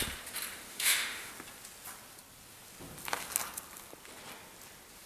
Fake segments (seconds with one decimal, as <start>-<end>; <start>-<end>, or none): 0.7-1.3

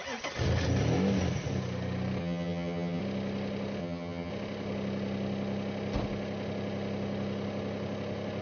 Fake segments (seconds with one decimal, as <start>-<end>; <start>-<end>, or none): 2.2-3.0; 3.8-4.3

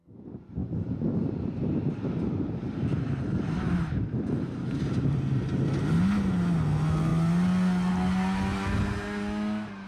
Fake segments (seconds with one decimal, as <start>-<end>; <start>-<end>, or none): 0.6-5.8

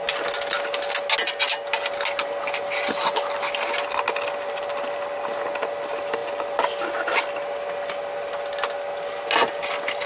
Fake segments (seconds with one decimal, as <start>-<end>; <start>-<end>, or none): none

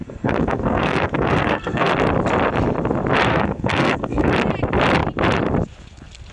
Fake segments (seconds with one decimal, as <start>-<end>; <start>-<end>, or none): 0.0-1.9; 3.3-4.3